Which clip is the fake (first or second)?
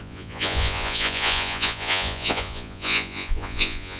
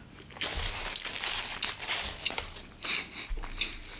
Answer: first